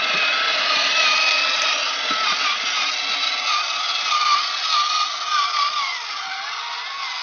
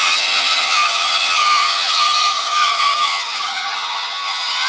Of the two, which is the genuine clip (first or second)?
first